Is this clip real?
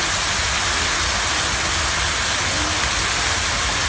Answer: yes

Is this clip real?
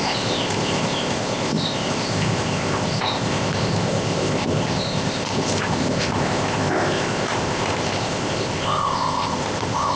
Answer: no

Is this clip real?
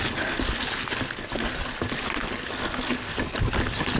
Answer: yes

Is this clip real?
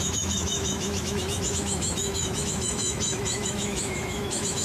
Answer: no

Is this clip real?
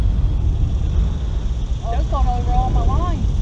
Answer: yes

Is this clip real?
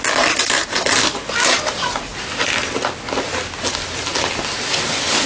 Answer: yes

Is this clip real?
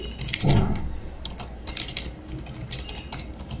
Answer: yes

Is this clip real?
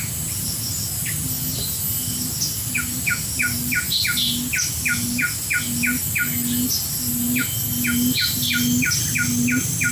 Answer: yes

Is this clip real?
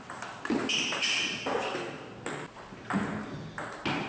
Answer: yes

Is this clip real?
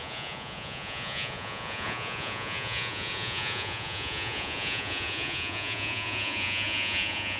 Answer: no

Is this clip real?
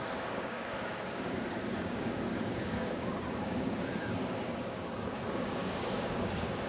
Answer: no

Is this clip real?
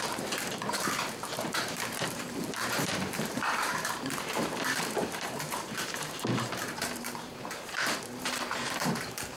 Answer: no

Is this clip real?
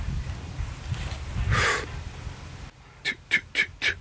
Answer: yes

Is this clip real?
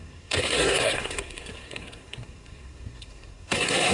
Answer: no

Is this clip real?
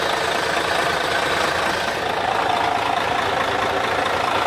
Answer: yes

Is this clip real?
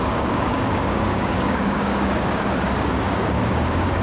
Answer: no